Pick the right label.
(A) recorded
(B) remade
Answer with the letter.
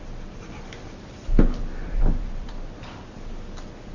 B